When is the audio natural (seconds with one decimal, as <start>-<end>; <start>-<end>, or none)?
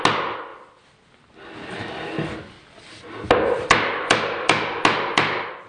0.0-5.7